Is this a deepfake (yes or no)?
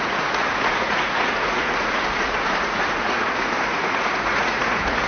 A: yes